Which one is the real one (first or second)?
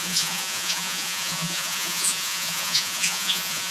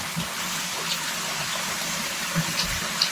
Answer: second